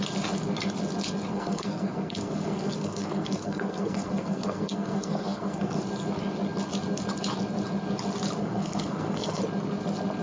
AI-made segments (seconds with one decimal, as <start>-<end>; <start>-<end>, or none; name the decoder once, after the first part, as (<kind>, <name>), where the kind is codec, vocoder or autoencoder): 1.3-5.8 (codec, SNAC); 8.4-9.4